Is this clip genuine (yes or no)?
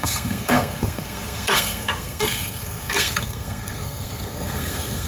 no